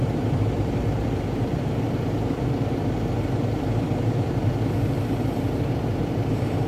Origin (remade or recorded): remade